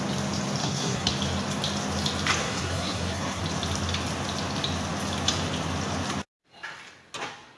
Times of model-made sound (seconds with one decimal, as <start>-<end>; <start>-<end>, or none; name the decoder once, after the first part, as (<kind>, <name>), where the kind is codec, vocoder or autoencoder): 0.6-1.1 (codec, SNAC); 2.4-3.4